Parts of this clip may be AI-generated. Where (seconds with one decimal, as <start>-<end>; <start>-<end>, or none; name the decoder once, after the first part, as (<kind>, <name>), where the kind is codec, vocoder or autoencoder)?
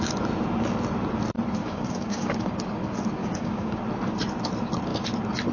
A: 1.6-2.4 (codec, DAC); 3.2-3.8